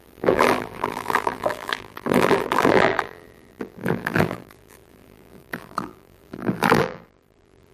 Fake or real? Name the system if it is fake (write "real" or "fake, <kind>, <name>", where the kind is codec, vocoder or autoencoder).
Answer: fake, vocoder, BigVGAN v2